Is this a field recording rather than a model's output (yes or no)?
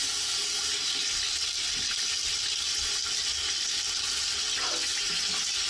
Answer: yes